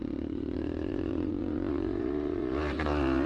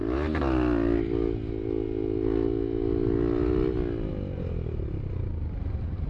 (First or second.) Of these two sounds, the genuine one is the second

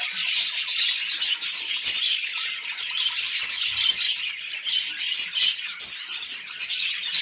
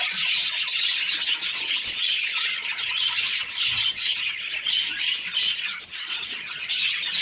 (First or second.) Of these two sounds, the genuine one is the first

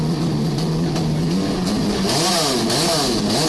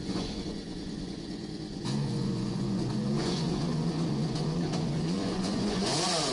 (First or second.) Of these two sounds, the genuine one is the first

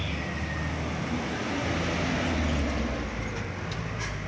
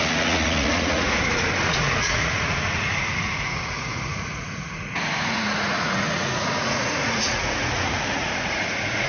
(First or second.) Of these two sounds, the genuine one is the first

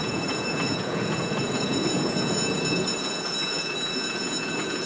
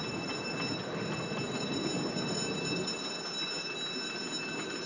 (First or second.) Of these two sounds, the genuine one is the second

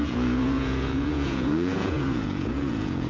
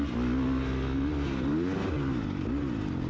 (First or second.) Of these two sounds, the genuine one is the second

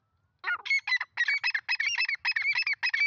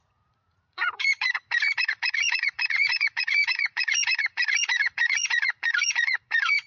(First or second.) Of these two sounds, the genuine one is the first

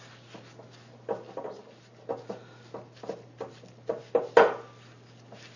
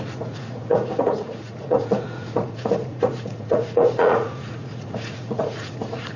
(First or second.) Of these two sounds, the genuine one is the first